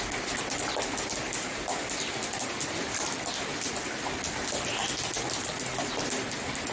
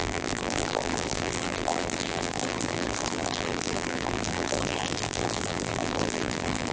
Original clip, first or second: first